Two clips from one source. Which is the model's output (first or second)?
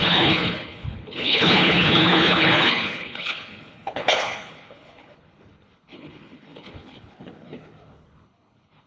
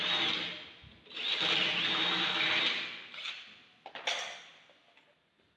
first